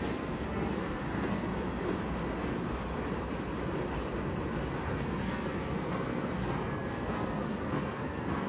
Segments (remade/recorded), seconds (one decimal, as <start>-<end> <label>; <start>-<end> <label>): 0.0-1.5 remade; 1.5-4.8 recorded; 4.8-8.5 remade